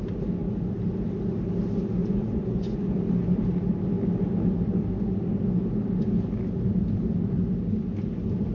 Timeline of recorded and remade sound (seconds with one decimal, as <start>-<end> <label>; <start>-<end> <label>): 0.0-2.0 recorded; 2.0-2.9 remade; 2.9-8.5 recorded